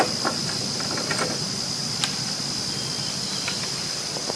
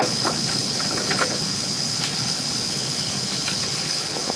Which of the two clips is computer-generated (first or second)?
second